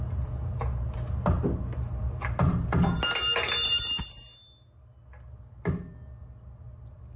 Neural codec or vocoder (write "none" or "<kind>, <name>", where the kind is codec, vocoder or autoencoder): none